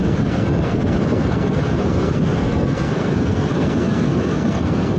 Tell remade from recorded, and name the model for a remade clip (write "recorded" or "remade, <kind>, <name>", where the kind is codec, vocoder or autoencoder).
remade, codec, SNAC